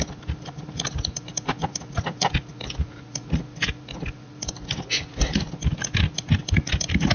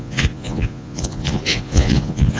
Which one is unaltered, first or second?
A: first